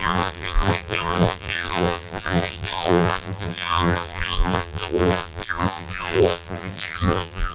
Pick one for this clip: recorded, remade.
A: remade